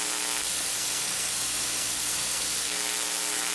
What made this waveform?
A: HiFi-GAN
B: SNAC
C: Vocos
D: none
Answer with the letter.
B